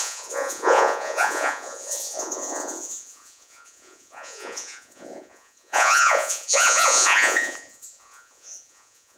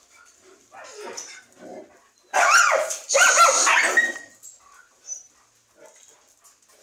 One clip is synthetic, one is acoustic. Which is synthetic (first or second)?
first